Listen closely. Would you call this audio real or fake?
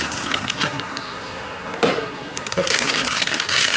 fake